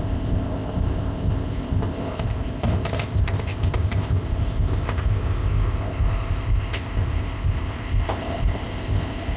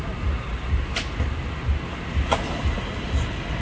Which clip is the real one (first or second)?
second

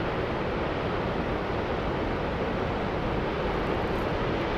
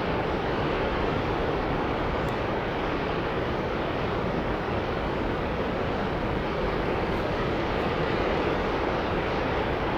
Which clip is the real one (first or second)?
first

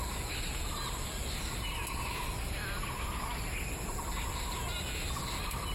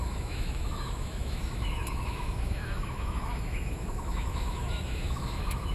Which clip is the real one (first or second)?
first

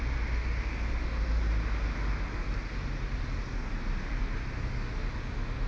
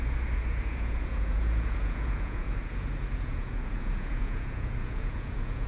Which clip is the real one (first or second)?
first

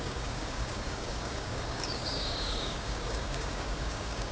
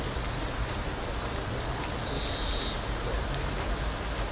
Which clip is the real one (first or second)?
second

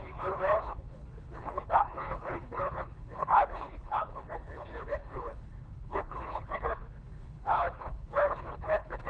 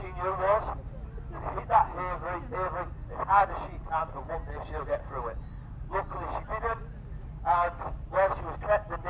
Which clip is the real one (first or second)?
second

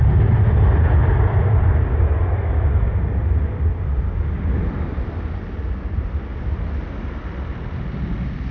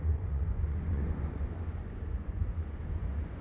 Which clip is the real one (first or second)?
first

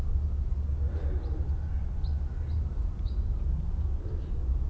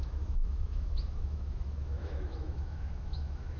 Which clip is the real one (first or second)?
first